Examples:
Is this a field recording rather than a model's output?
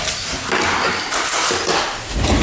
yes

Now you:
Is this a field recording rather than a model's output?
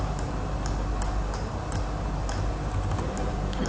yes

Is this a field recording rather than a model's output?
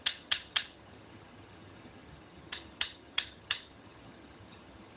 no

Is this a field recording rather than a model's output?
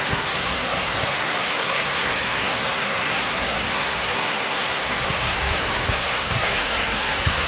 no